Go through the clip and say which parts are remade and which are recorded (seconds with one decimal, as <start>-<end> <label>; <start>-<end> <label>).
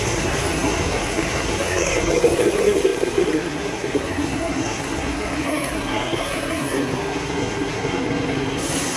0.0-9.0 remade